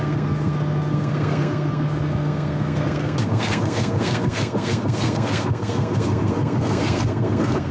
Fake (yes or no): yes